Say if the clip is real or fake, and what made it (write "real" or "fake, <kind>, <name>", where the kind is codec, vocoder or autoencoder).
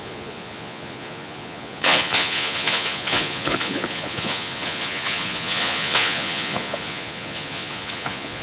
fake, vocoder, Vocos